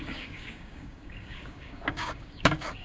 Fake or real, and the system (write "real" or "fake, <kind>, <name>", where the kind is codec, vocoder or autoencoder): fake, codec, DAC